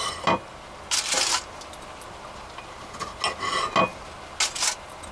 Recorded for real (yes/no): yes